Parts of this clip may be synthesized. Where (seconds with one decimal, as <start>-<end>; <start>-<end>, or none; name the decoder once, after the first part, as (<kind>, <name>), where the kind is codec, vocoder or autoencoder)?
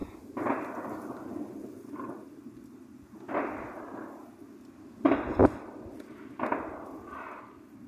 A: none